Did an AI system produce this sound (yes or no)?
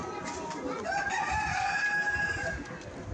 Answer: no